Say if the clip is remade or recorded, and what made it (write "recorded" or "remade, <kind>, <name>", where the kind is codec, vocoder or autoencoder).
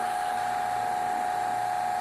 recorded